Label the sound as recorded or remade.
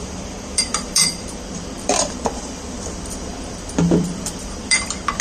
remade